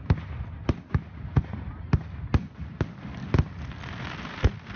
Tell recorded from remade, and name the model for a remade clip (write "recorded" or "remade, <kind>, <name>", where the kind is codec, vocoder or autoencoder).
recorded